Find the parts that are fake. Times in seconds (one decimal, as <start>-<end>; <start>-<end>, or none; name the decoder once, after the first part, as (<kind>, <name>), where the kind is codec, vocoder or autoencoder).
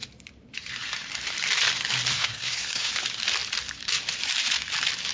2.1-2.9 (codec, SNAC)